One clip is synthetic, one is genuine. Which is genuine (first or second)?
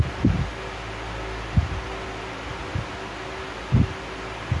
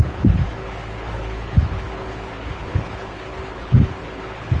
first